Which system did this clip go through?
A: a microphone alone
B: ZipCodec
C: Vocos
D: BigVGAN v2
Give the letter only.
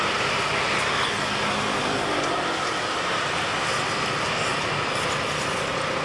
A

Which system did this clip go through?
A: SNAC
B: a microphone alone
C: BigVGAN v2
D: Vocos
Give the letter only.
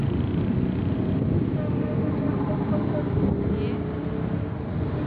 B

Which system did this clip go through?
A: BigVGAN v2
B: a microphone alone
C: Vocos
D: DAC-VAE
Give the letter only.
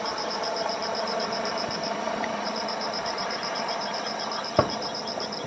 A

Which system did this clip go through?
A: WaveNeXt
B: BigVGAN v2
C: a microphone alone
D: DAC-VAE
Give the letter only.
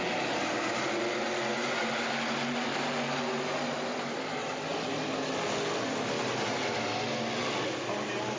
C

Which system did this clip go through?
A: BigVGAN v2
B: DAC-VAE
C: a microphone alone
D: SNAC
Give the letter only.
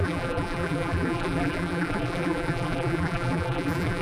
A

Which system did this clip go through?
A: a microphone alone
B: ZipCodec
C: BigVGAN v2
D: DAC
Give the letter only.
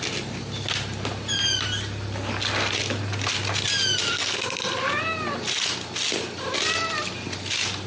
A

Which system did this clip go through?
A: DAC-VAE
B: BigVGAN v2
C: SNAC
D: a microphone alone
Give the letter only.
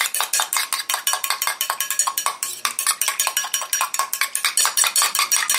D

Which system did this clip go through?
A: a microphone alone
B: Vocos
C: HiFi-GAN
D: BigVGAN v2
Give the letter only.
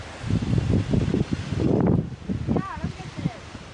A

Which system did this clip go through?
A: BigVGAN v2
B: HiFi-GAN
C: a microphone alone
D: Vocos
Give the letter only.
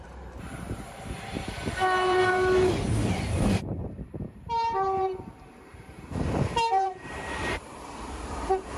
A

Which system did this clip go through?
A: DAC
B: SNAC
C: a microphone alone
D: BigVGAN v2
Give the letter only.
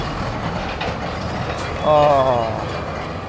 C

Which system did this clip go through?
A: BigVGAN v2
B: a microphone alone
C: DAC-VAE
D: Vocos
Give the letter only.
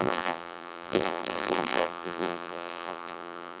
A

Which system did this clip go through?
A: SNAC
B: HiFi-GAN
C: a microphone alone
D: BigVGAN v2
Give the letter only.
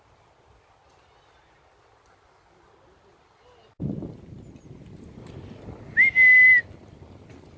C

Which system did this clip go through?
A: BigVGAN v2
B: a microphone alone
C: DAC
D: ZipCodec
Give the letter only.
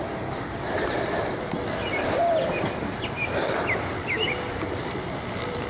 A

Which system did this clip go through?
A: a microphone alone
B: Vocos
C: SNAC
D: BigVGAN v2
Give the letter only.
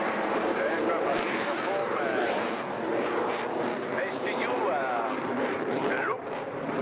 D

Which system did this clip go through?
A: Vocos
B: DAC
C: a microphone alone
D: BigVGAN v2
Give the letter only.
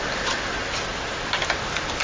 C